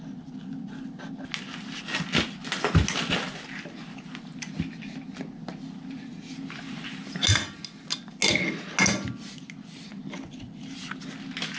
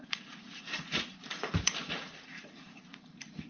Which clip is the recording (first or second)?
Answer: first